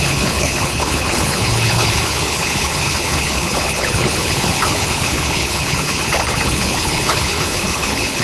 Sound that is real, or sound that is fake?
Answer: fake